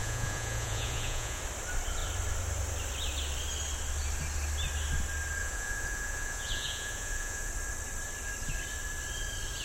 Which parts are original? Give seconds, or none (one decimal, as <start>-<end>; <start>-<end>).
1.4-5.4; 7.5-9.6